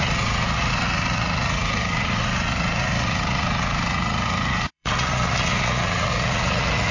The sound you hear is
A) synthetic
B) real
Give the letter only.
A